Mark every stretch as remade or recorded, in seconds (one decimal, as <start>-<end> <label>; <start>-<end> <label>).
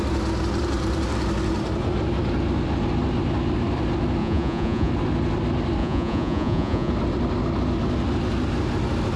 0.0-4.2 recorded; 4.2-4.9 remade; 4.9-5.8 recorded; 5.8-6.9 remade; 6.9-9.2 recorded